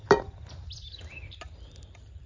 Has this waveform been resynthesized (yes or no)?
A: no